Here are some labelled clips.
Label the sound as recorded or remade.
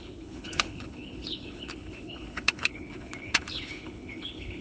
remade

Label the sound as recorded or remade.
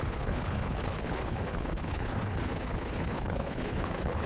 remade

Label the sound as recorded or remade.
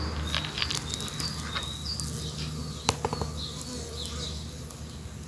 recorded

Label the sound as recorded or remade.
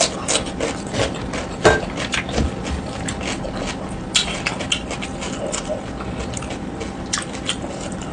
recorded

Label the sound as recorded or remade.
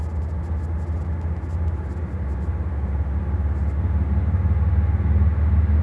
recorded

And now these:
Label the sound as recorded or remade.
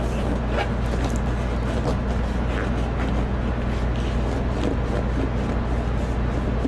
recorded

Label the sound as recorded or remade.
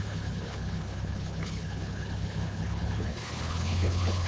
remade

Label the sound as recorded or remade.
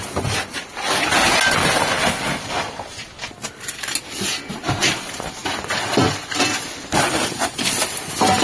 recorded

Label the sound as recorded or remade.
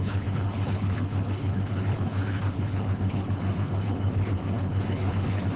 remade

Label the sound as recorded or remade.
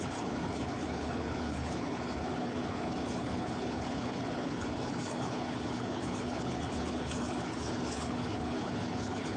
remade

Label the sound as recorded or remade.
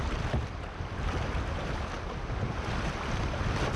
recorded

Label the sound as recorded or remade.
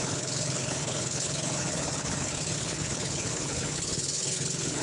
remade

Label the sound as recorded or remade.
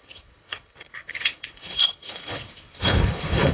remade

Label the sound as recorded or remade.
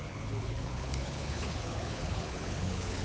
remade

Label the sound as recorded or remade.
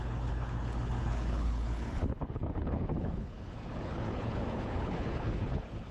remade